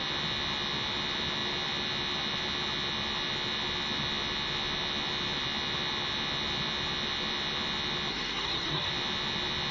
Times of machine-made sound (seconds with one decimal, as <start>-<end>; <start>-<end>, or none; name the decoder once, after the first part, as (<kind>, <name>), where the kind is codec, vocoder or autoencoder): 8.1-8.9 (codec, SNAC)